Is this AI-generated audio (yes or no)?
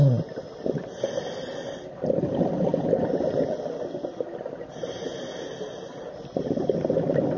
no